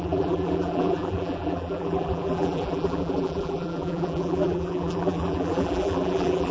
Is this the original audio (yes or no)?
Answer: no